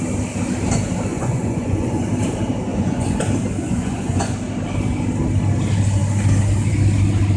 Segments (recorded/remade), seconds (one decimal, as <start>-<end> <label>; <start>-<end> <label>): 0.0-1.1 recorded; 1.1-2.1 remade; 2.1-2.7 recorded; 2.7-3.2 remade; 3.2-3.6 recorded; 3.6-4.3 remade; 4.3-7.4 recorded